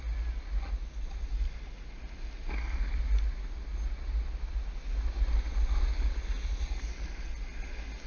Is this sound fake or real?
real